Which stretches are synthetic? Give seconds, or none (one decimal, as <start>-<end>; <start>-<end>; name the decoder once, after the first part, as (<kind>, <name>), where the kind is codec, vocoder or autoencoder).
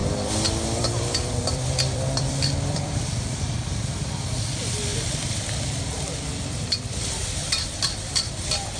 0.0-8.8 (vocoder, BigVGAN v2)